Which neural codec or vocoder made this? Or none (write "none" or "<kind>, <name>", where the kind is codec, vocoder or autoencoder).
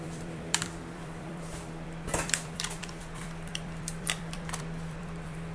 vocoder, BigVGAN v2